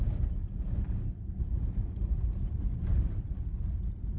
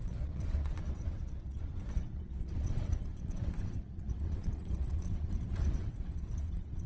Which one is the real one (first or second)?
first